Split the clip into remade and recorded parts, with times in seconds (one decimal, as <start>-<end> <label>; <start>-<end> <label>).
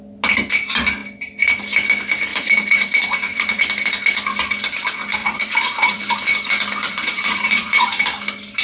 0.0-2.3 recorded; 2.3-3.6 remade; 3.6-5.2 recorded; 5.2-6.0 remade; 6.0-6.9 recorded; 6.9-8.0 remade; 8.0-8.6 recorded